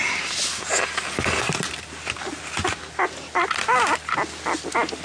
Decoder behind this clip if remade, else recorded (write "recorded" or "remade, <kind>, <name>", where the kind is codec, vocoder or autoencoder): recorded